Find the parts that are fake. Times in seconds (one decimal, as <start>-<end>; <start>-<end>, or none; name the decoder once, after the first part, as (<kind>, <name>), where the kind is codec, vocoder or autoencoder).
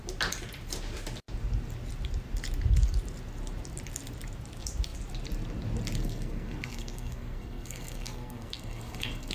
6.0-9.3 (codec, SNAC)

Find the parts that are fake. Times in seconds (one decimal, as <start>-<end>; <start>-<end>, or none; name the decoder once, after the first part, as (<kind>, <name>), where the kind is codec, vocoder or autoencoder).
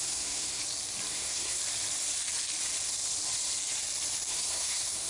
0.0-0.6 (codec, SNAC); 1.1-1.6; 4.3-5.1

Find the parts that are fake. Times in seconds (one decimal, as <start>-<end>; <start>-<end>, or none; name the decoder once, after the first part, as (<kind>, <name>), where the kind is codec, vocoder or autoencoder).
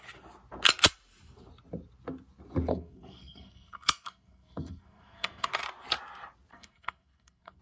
2.7-5.5 (codec, SNAC); 6.5-7.6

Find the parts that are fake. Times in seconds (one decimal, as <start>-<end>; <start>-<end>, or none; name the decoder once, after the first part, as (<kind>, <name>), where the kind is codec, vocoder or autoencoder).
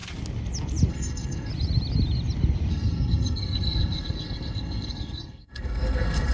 0.9-1.5 (codec, SNAC); 2.7-6.3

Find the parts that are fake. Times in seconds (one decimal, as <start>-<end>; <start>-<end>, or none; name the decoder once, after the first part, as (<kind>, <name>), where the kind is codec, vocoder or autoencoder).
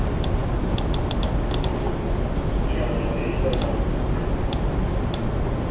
none